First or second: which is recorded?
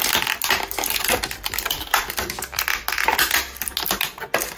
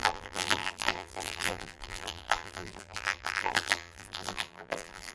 first